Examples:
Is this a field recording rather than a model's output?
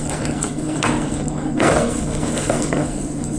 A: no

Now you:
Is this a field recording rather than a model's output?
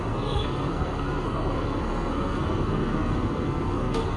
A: no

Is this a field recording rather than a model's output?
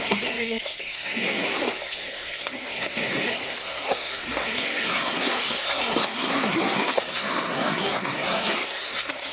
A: no